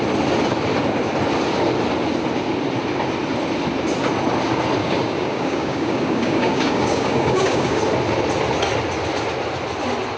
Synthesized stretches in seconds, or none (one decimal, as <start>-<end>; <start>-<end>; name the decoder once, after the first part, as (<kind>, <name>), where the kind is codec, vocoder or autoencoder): 4.8-7.8 (codec, DAC)